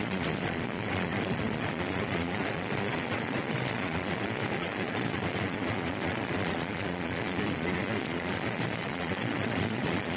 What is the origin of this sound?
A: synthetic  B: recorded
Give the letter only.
A